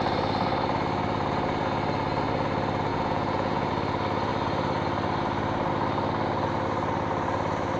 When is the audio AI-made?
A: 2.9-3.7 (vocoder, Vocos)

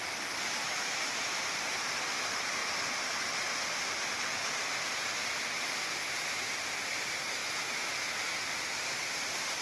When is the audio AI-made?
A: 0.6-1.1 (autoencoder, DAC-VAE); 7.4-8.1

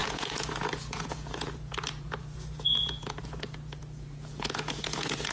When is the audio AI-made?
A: 0.0-5.3 (vocoder, Vocos)